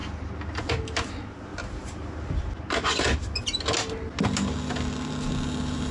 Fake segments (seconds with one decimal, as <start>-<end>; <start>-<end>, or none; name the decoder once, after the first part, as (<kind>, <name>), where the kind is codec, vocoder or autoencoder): none